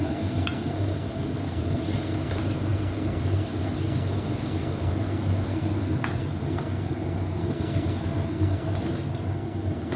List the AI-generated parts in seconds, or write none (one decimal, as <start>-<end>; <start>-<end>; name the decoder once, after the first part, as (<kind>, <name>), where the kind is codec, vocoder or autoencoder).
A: 0.0-10.0 (codec, SNAC)